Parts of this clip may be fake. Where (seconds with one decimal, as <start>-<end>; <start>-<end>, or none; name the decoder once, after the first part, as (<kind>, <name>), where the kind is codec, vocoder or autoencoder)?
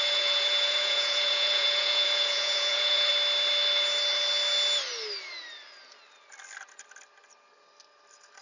0.0-3.1 (vocoder, Vocos)